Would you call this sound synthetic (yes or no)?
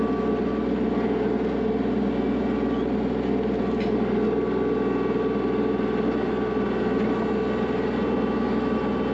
no